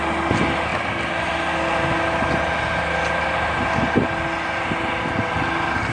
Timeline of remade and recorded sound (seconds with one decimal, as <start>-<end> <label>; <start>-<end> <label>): 0.0-5.9 recorded